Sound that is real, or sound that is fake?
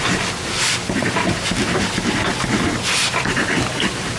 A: real